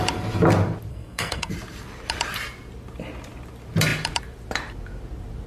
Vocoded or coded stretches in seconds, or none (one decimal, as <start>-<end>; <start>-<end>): 0.9-1.5